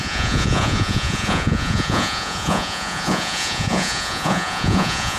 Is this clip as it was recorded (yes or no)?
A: no